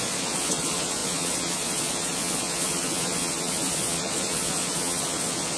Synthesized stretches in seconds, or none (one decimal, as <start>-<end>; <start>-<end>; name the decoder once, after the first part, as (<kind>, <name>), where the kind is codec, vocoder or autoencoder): 0.0-5.6 (vocoder, Vocos)